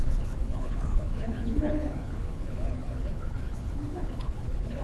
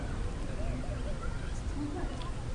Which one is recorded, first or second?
second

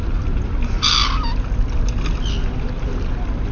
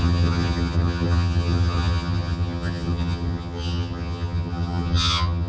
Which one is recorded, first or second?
first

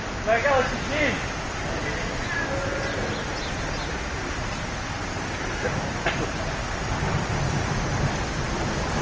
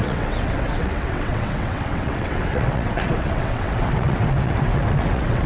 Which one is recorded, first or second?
first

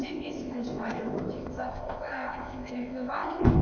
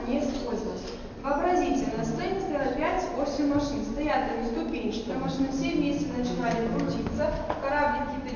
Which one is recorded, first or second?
second